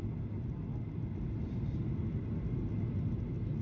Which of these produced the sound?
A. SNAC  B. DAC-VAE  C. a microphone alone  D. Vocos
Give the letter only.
C